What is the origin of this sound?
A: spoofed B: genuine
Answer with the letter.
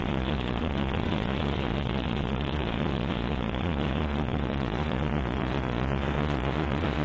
A